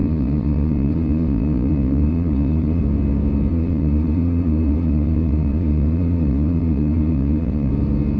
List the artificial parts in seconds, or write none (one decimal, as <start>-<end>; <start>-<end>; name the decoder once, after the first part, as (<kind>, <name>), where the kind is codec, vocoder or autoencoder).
0.0-2.8 (vocoder, Vocos); 3.5-7.7